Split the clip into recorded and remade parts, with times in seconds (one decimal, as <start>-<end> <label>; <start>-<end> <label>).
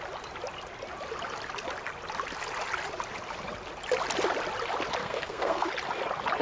0.0-5.0 recorded; 5.0-5.7 remade; 5.7-6.4 recorded